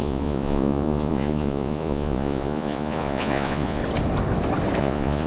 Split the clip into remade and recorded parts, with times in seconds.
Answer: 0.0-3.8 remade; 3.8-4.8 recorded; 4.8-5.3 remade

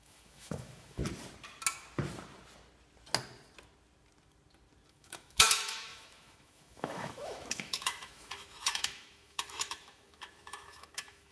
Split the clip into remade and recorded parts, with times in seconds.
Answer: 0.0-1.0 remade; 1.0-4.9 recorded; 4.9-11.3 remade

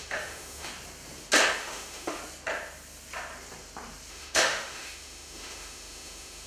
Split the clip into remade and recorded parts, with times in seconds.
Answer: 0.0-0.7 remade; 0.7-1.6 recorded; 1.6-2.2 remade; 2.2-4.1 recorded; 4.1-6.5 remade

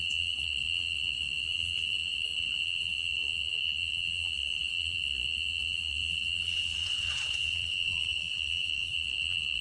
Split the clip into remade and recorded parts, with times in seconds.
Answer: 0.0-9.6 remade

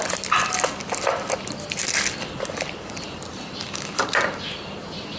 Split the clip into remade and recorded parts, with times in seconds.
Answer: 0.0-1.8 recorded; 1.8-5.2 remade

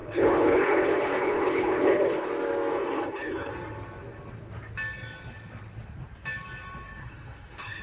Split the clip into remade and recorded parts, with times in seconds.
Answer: 0.0-2.3 remade; 2.3-2.7 recorded; 2.7-3.5 remade; 3.5-7.0 recorded; 7.0-7.8 remade